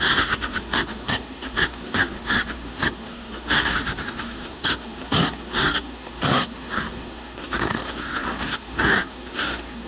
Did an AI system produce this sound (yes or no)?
yes